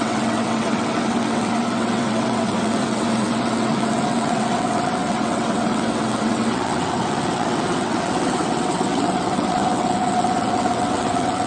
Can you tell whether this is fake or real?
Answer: fake